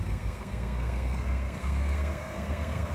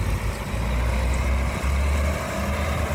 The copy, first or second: first